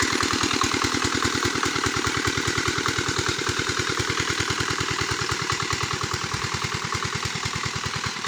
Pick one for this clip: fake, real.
fake